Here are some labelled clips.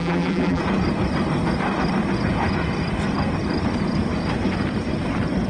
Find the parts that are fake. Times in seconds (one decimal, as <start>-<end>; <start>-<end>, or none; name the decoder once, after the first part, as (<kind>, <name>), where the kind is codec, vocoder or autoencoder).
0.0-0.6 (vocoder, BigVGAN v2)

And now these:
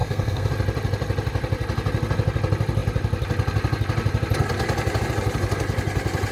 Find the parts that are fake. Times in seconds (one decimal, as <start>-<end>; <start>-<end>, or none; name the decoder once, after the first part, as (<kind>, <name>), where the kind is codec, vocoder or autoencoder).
0.0-0.5 (codec, SNAC)

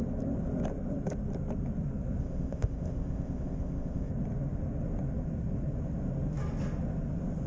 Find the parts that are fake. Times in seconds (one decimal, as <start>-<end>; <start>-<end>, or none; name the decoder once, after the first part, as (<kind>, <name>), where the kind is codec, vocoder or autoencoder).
2.2-4.1 (codec, ZipCodec)

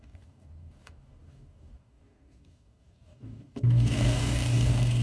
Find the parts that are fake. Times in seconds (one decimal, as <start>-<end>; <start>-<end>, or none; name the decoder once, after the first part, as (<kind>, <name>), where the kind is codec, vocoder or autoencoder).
0.0-5.0 (codec, DAC)